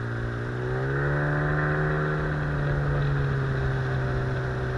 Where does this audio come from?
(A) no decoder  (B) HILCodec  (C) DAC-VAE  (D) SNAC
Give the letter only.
A